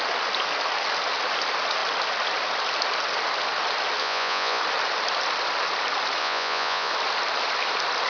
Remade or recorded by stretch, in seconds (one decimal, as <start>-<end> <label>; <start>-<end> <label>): 0.0-4.0 recorded; 4.0-4.6 remade; 4.6-6.2 recorded; 6.2-6.9 remade; 6.9-8.1 recorded